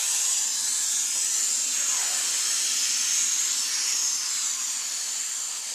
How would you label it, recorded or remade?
recorded